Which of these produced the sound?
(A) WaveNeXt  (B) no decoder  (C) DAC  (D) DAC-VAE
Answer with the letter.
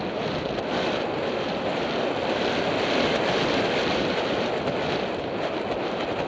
B